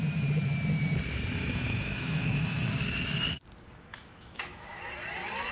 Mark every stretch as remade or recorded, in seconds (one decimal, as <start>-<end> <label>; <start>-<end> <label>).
0.0-1.4 recorded; 1.4-2.7 remade; 2.7-3.9 recorded; 3.9-4.8 remade; 4.8-5.5 recorded